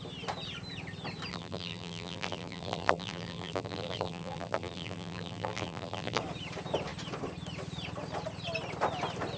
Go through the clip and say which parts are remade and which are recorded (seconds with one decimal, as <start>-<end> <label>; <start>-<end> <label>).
0.0-1.3 recorded; 1.3-6.2 remade; 6.2-9.4 recorded